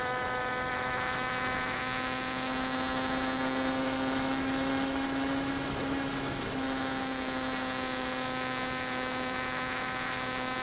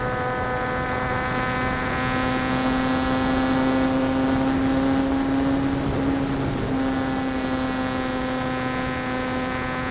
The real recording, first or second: second